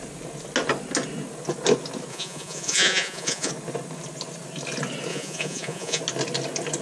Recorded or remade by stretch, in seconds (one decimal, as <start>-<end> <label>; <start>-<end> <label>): 0.0-2.1 recorded; 2.1-3.5 remade; 3.5-5.1 recorded; 5.1-6.0 remade; 6.0-6.8 recorded